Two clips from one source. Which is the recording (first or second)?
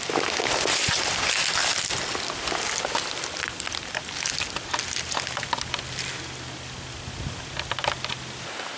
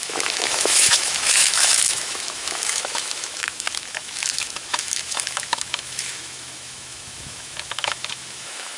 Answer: first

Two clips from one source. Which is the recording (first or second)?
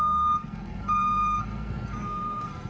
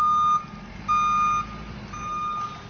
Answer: second